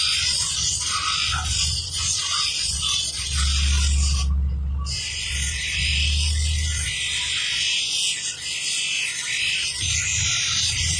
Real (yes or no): yes